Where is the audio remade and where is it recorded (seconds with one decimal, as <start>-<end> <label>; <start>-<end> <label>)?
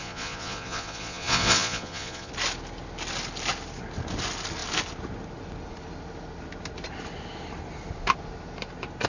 0.0-2.3 remade; 2.3-9.1 recorded